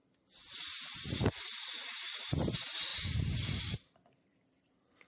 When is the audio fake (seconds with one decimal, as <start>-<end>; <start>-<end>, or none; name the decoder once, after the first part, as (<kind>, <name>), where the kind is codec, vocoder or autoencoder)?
1.2-5.1 (vocoder, BigVGAN v2)